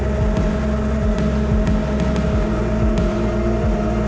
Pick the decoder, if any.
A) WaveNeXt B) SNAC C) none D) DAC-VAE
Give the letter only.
C